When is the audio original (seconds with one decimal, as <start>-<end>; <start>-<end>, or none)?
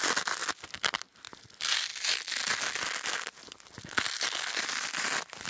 0.0-5.5